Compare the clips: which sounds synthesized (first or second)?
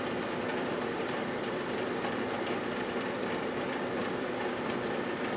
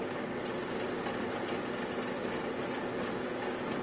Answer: first